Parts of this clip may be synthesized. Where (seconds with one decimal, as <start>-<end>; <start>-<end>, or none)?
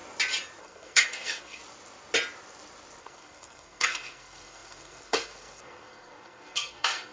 0.6-1.6; 3.0-7.1